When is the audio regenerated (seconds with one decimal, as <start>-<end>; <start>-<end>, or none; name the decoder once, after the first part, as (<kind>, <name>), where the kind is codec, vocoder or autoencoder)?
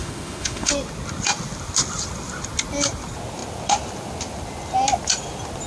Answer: 0.0-0.7 (autoencoder, DAC-VAE)